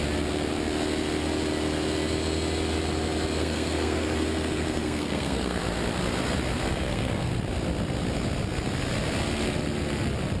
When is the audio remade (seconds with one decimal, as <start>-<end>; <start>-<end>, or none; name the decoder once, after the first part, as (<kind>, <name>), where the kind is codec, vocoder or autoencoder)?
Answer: 3.4-5.6 (codec, SNAC); 6.7-7.3